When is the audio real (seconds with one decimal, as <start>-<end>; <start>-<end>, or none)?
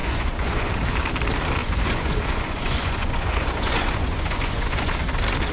0.7-1.6; 4.9-5.5